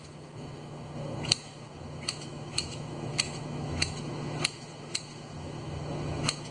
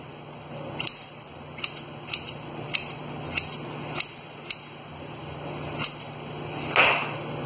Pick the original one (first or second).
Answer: second